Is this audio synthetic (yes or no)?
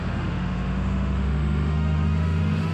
yes